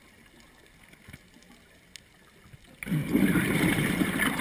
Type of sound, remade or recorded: recorded